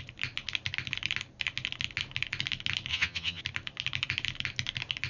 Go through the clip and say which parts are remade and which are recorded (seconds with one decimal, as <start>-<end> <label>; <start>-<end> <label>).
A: 0.0-2.9 recorded; 2.9-3.4 remade; 3.4-5.1 recorded